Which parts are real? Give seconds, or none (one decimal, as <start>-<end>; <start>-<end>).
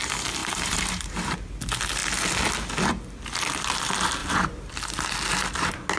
0.0-0.4; 1.5-4.2; 4.7-6.0